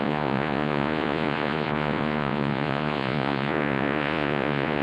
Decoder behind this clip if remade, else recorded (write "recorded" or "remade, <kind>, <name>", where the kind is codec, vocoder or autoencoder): remade, vocoder, Vocos